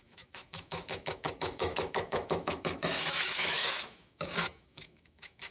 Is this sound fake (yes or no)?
yes